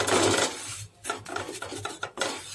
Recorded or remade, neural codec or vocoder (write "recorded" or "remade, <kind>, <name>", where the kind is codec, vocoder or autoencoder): recorded